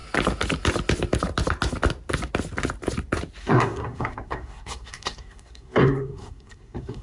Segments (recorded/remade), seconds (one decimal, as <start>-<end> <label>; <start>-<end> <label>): 0.0-3.4 recorded; 3.4-7.0 remade